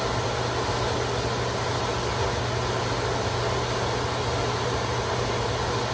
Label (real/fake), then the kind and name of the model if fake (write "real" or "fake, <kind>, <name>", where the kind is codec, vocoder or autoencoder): real